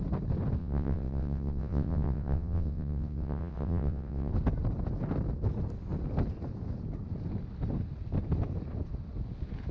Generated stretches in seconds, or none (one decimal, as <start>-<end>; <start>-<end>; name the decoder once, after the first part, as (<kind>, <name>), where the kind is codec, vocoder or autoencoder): 0.6-4.3 (vocoder, WaveNeXt)